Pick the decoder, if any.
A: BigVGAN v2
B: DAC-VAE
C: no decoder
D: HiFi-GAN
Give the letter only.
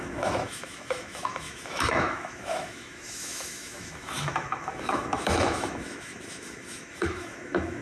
B